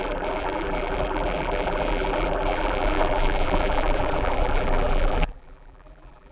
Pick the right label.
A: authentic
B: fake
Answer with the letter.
B